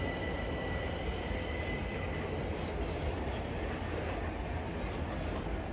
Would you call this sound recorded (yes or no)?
yes